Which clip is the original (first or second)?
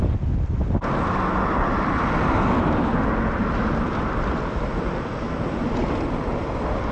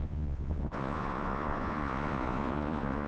first